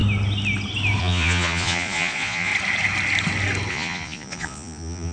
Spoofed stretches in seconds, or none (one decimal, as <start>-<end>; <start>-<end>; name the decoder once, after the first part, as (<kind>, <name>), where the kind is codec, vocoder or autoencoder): 1.0-2.5 (vocoder, Vocos); 3.7-5.1